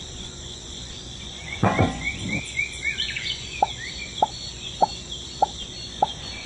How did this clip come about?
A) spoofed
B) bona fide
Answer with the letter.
A